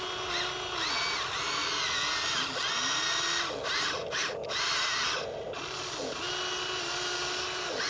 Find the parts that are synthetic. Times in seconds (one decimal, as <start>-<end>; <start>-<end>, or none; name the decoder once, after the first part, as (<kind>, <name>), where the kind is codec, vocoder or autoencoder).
none